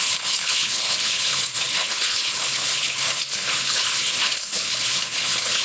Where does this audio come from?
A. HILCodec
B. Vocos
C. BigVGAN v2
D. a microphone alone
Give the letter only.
A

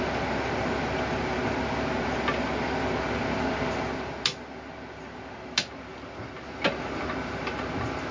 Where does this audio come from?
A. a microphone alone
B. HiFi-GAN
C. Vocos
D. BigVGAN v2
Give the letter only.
A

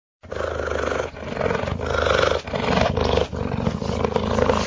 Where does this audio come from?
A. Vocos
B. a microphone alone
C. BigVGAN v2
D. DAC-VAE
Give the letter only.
B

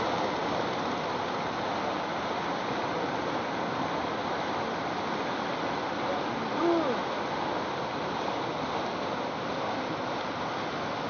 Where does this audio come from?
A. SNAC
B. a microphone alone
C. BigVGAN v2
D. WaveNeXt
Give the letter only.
B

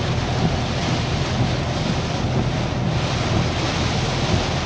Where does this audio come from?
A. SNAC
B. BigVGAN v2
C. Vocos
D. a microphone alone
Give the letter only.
D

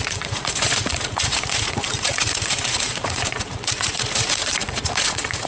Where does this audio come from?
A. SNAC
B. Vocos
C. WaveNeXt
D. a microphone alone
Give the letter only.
B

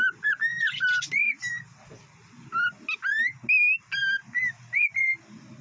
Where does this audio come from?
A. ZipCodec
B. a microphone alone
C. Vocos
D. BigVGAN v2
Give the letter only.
B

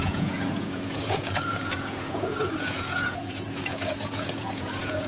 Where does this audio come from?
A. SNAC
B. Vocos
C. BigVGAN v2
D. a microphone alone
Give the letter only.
B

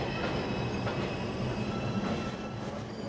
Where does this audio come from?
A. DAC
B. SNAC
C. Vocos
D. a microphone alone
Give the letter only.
D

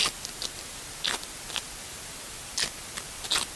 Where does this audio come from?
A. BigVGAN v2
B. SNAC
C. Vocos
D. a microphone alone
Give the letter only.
D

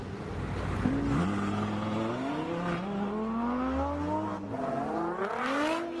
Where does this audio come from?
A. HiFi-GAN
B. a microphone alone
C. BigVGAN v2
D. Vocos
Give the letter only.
B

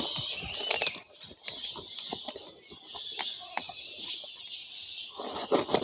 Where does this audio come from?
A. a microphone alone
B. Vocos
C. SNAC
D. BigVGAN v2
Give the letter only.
A